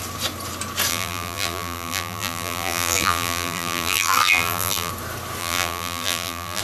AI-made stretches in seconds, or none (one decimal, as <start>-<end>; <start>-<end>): 0.9-4.9; 5.4-6.6